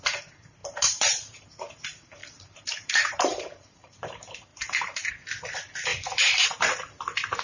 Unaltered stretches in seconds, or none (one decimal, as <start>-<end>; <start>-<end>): 0.0-0.6; 1.4-2.2; 4.1-4.5; 5.1-5.9; 7.0-7.4